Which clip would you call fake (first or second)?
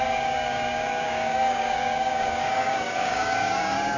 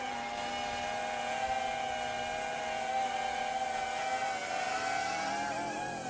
first